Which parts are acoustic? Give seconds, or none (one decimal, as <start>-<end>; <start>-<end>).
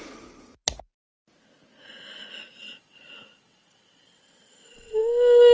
0.0-2.6; 5.0-5.5